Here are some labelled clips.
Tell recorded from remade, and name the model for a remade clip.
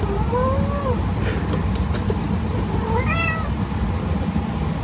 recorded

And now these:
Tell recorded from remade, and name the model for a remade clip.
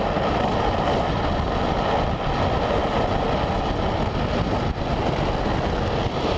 recorded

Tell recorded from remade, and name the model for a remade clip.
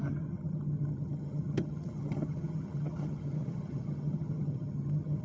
remade, vocoder, HiFi-GAN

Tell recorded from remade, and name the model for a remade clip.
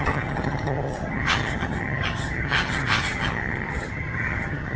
remade, vocoder, HiFi-GAN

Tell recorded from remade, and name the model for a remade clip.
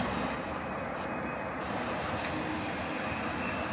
recorded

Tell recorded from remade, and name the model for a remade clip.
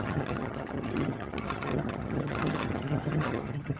remade, vocoder, HiFi-GAN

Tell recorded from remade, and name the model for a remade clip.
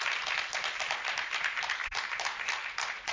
recorded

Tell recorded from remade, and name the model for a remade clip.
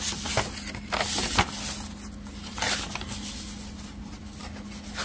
recorded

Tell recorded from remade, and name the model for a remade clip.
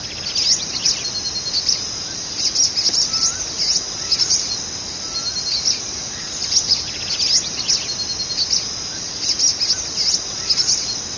recorded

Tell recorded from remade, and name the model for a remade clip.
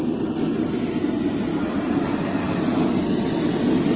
recorded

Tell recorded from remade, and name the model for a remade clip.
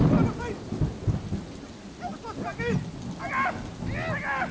recorded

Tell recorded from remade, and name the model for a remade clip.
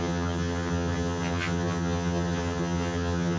remade, vocoder, HiFi-GAN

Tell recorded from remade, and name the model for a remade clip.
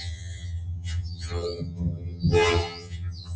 remade, vocoder, HiFi-GAN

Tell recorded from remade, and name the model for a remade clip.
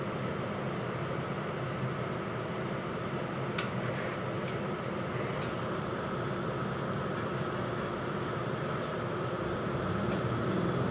recorded